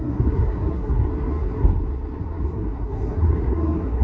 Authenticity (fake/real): fake